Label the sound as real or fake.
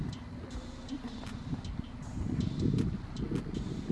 real